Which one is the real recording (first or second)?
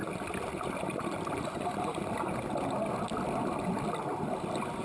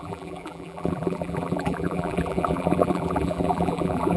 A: first